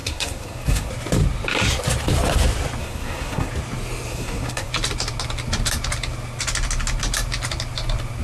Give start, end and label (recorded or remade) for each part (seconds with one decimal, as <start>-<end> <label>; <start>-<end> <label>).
0.0-0.9 remade; 0.9-2.8 recorded; 2.8-3.5 remade; 3.5-4.1 recorded; 4.1-4.7 remade; 4.7-8.2 recorded